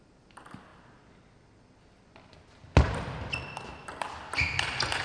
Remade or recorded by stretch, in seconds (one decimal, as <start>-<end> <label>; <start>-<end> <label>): 0.0-5.0 recorded